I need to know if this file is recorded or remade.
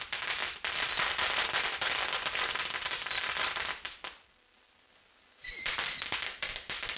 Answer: remade